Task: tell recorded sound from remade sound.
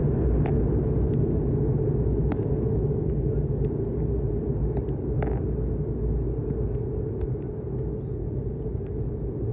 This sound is recorded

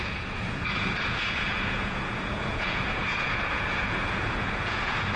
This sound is remade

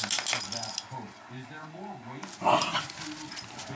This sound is recorded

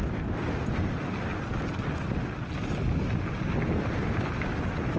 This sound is recorded